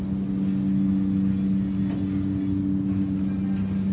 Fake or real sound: real